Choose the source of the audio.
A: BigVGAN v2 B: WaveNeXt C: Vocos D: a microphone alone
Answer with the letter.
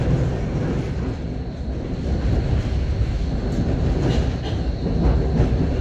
D